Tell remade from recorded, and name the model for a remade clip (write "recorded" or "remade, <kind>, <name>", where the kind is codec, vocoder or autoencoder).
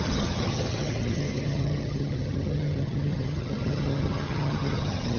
remade, vocoder, HiFi-GAN